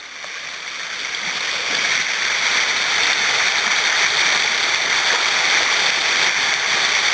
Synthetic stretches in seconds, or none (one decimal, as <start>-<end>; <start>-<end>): none